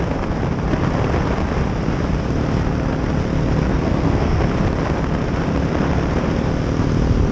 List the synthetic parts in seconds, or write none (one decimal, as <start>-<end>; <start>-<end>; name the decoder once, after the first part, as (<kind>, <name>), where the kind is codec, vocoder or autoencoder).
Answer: 3.7-4.4 (codec, SNAC)